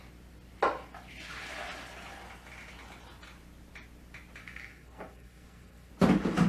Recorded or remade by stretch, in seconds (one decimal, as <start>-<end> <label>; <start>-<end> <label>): 0.0-4.4 recorded; 4.4-5.9 remade; 5.9-6.5 recorded